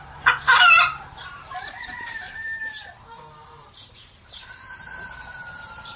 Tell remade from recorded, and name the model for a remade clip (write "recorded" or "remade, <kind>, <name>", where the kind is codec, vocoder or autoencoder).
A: remade, vocoder, BigVGAN v2